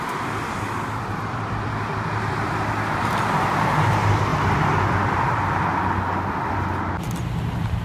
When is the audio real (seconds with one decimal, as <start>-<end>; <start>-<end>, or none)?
4.3-6.5